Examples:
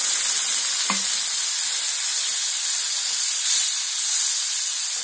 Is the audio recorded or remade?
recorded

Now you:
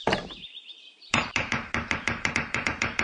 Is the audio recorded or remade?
remade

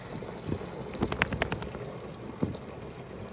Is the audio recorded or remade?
recorded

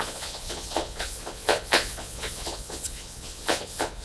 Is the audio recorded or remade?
remade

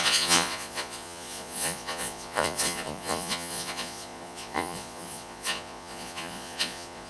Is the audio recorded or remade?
remade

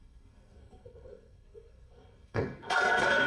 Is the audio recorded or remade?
remade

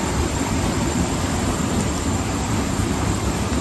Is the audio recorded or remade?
remade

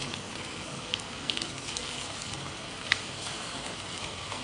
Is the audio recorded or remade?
remade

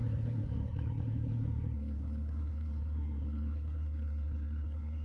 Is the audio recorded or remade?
remade